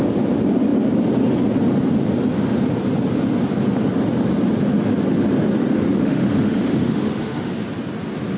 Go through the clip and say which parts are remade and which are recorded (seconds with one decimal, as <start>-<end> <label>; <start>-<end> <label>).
0.0-5.6 recorded; 5.6-7.5 remade; 7.5-8.4 recorded